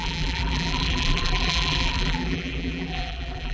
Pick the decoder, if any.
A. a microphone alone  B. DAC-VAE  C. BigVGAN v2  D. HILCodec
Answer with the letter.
C